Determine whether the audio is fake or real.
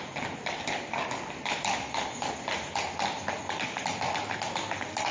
real